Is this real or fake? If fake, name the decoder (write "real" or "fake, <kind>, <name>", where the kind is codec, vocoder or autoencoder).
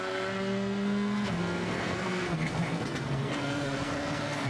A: fake, codec, SNAC